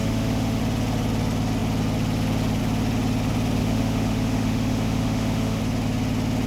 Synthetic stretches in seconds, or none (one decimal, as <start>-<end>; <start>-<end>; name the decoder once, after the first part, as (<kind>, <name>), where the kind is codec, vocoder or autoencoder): 0.0-0.6 (autoencoder, DAC-VAE); 3.6-5.6

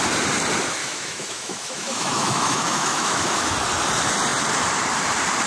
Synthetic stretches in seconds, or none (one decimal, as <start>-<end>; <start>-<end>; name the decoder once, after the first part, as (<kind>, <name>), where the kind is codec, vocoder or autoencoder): 0.8-3.5 (autoencoder, DAC-VAE)

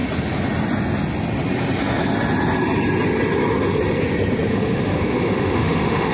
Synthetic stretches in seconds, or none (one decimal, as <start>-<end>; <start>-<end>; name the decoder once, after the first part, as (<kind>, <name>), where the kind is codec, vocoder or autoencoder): 4.5-6.1 (autoencoder, DAC-VAE)

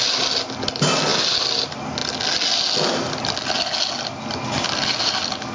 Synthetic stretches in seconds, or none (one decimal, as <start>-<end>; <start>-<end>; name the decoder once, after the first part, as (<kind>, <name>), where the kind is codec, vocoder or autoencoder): none

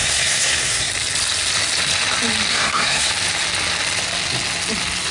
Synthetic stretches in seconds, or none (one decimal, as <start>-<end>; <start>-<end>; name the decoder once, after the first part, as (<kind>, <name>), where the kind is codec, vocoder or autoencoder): 0.0-0.9 (codec, SNAC); 2.5-3.1